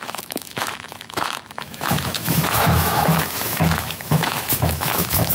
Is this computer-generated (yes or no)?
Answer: yes